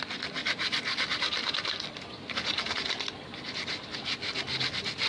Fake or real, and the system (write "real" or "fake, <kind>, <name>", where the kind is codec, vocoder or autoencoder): real